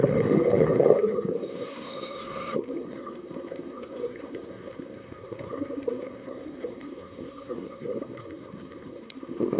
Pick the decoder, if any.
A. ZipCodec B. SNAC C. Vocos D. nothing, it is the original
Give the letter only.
B